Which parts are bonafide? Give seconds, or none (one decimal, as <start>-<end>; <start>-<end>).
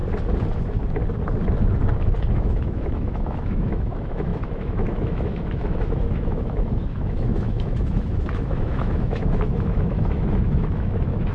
0.0-2.3